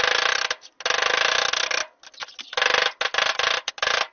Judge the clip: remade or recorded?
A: recorded